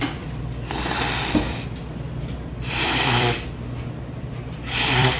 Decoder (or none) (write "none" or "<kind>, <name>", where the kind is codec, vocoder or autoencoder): vocoder, BigVGAN v2